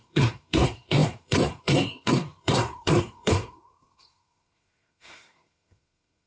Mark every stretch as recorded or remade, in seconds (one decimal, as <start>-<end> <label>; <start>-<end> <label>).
0.0-6.3 remade